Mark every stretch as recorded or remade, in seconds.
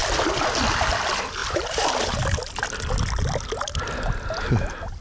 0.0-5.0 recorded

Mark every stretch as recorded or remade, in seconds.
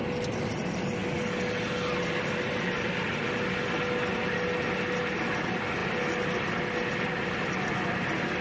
0.0-8.4 recorded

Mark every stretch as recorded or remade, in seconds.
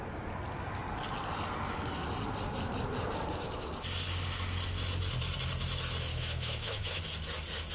0.0-6.1 recorded; 6.1-7.0 remade; 7.0-7.7 recorded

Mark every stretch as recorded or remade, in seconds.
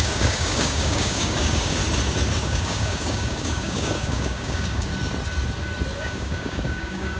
0.0-1.8 remade; 1.8-2.4 recorded; 2.4-4.9 remade; 4.9-6.0 recorded; 6.0-7.2 remade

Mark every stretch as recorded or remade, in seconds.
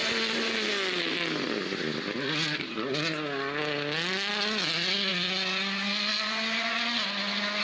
0.0-7.6 recorded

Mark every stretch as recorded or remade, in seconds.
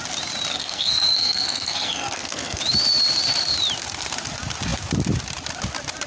0.0-0.5 recorded; 0.5-2.6 remade; 2.6-6.1 recorded